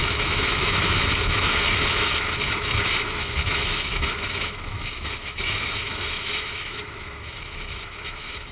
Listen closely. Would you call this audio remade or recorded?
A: remade